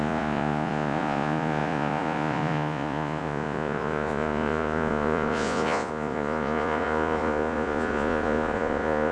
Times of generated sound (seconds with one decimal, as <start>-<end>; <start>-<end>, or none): 0.0-9.1

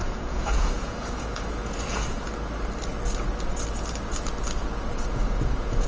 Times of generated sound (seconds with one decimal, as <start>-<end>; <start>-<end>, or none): 0.0-2.3; 4.6-5.9

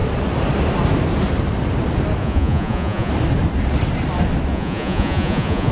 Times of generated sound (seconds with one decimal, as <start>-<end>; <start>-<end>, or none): 2.2-3.1; 4.5-5.7